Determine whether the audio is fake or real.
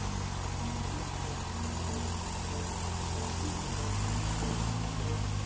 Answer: real